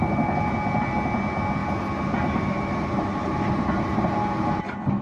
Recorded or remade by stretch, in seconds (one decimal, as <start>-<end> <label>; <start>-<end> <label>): 0.0-1.6 recorded; 1.6-4.6 remade; 4.6-5.0 recorded